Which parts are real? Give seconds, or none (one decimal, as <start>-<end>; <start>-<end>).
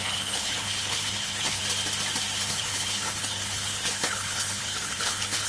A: 1.6-2.5